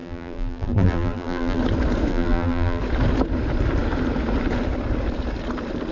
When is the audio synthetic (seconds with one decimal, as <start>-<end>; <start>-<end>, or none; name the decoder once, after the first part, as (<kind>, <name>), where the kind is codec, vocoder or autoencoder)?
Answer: 0.0-1.6 (vocoder, BigVGAN v2); 2.1-2.8